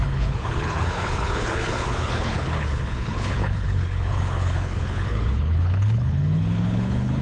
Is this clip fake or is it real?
fake